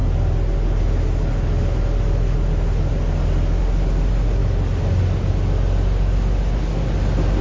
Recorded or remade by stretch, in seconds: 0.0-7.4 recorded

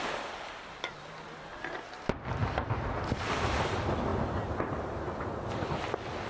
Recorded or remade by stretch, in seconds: 0.0-2.4 recorded; 2.4-3.6 remade; 3.6-6.3 recorded

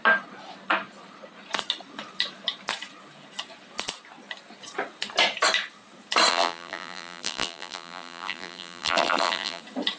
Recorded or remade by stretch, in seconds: 0.0-6.3 recorded; 6.3-9.6 remade; 9.6-10.0 recorded

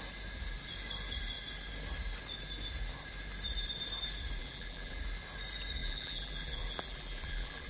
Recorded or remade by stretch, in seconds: 0.0-4.4 recorded; 4.4-5.0 remade; 5.0-5.8 recorded; 5.8-7.7 remade

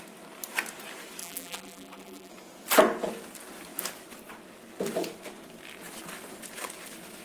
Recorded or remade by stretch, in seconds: 0.0-1.2 recorded; 1.2-2.3 remade; 2.3-7.2 recorded